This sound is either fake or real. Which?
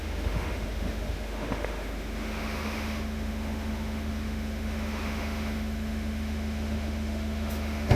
fake